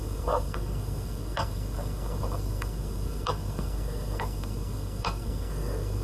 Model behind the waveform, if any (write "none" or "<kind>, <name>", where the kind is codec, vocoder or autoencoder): codec, SNAC